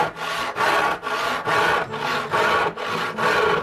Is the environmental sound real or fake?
real